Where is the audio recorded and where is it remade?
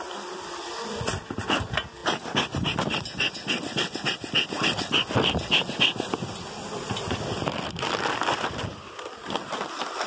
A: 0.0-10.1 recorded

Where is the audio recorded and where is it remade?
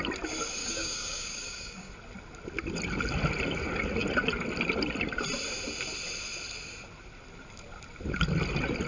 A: 0.0-0.6 recorded; 0.6-1.9 remade; 1.9-8.9 recorded